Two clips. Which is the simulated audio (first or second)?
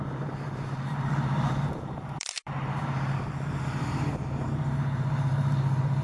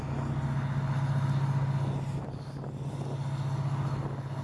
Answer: first